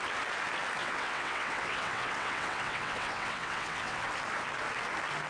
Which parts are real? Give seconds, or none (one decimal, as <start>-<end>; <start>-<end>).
0.0-0.8; 4.0-5.3